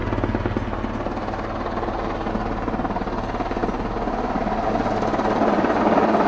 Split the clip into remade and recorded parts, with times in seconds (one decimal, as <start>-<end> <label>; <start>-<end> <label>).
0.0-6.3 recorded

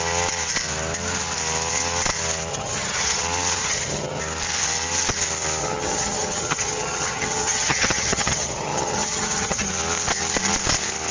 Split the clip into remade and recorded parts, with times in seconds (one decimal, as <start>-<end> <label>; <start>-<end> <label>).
0.0-2.5 recorded; 2.5-3.2 remade; 3.2-3.6 recorded; 3.6-4.2 remade; 4.2-5.6 recorded; 5.6-9.7 remade; 9.7-11.1 recorded

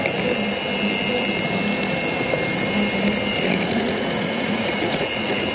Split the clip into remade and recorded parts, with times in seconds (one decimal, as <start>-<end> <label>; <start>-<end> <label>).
0.0-3.3 recorded; 3.3-5.5 remade

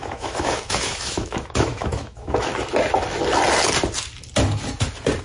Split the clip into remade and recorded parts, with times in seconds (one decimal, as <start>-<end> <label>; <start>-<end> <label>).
0.0-2.5 remade; 2.5-5.2 recorded